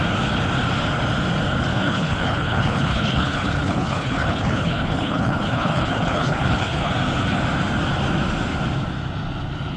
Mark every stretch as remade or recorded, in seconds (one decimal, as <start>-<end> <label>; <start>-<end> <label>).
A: 0.0-1.7 recorded; 1.7-6.9 remade; 6.9-9.8 recorded

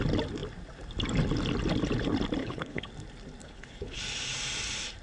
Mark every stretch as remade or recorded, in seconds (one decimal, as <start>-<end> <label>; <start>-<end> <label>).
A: 0.0-2.4 recorded; 2.4-2.9 remade; 2.9-3.4 recorded; 3.4-4.0 remade; 4.0-5.0 recorded

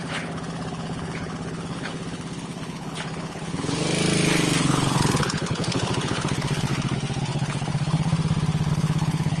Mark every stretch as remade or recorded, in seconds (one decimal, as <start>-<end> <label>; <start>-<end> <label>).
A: 0.0-3.8 remade; 3.8-4.6 recorded; 4.6-6.7 remade; 6.7-7.2 recorded; 7.2-8.1 remade; 8.1-8.7 recorded; 8.7-9.4 remade

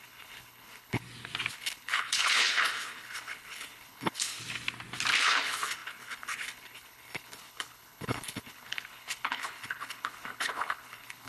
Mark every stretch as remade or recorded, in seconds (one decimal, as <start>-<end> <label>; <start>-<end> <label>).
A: 0.0-1.0 remade; 1.0-1.5 recorded; 1.5-4.4 remade; 4.4-5.2 recorded; 5.2-11.3 remade

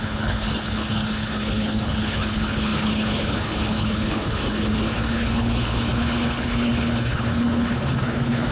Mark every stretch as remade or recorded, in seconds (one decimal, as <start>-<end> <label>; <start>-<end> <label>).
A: 0.0-8.5 remade

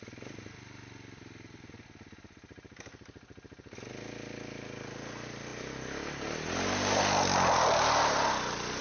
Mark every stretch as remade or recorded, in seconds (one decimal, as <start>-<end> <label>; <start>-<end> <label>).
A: 0.0-8.8 recorded

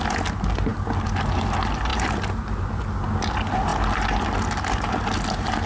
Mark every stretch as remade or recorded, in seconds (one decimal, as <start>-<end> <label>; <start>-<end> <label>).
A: 0.0-5.7 recorded

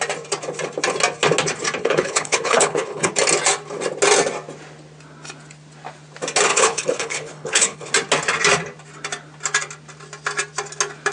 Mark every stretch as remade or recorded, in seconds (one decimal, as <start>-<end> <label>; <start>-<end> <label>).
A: 0.0-1.8 recorded; 1.8-3.1 remade; 3.1-6.5 recorded; 6.5-7.9 remade; 7.9-11.1 recorded